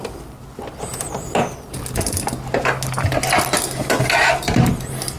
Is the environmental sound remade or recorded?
recorded